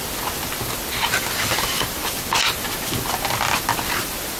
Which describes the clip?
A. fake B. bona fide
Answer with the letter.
B